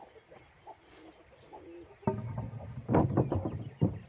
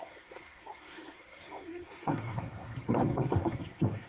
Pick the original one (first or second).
first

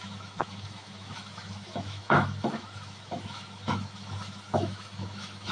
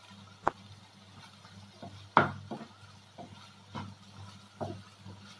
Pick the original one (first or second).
second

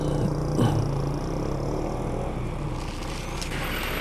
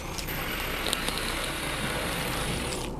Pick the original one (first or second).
first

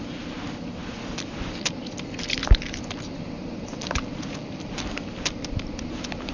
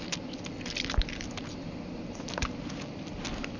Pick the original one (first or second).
second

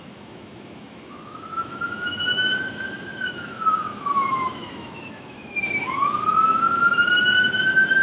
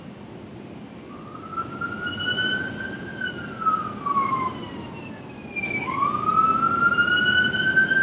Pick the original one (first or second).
second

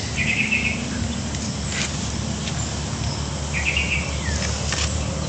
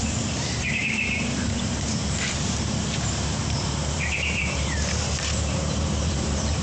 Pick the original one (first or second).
first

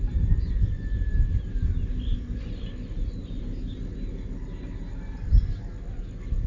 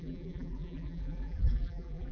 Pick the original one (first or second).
first